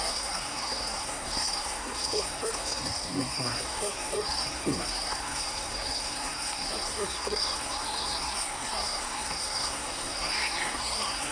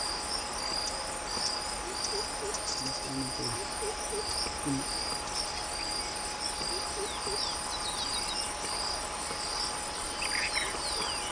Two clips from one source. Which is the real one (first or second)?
second